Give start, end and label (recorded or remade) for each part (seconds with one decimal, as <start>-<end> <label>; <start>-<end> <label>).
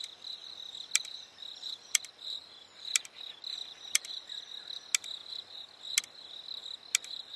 0.0-0.4 recorded; 0.4-4.1 remade; 4.1-7.4 recorded